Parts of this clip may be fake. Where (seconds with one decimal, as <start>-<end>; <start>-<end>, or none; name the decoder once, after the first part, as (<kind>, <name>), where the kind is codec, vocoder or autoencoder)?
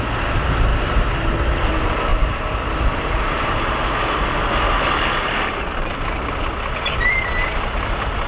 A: 0.7-1.7 (vocoder, BigVGAN v2); 2.1-6.4